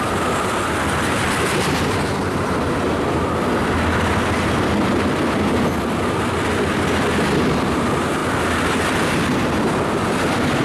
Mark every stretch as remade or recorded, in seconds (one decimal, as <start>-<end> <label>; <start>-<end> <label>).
0.0-10.6 recorded